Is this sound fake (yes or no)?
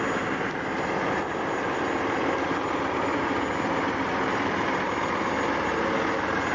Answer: no